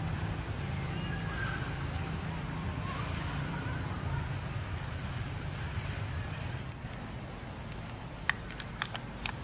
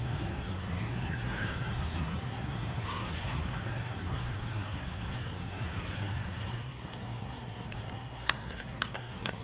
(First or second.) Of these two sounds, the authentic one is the first